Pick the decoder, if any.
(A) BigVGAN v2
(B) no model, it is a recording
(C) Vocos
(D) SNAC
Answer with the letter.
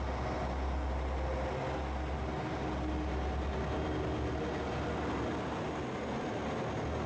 B